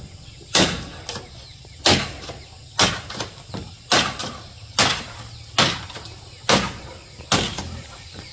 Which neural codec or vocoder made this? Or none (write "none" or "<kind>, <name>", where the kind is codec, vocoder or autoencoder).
none